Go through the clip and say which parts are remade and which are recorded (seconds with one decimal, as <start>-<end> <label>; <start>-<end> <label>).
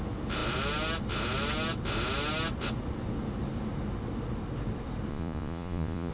0.0-5.1 recorded; 5.1-6.1 remade